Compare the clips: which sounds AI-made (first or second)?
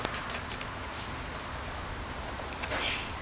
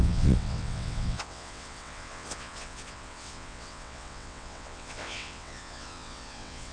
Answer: second